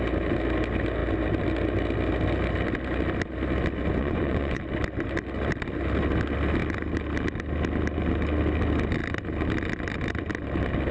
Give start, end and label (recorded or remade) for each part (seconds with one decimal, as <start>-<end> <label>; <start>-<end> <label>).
0.0-4.0 recorded; 4.0-4.6 remade; 4.6-10.9 recorded